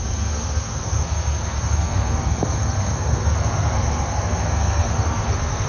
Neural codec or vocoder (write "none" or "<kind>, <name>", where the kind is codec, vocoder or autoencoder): codec, SNAC